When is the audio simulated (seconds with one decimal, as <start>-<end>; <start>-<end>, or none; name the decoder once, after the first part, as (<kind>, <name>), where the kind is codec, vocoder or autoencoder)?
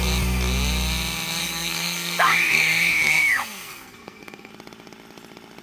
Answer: 1.4-4.5 (codec, SNAC)